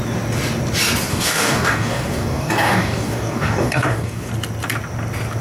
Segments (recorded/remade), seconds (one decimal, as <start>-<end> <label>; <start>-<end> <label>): 0.0-1.1 recorded; 1.1-4.3 remade; 4.3-5.4 recorded